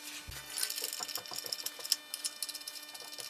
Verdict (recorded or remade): recorded